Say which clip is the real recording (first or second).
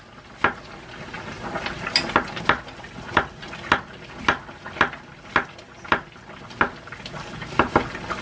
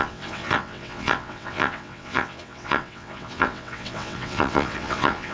first